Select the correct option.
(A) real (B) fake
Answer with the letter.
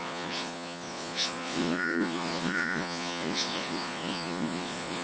B